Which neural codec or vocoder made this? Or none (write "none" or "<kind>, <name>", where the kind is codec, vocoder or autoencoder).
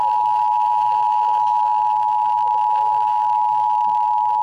autoencoder, DAC-VAE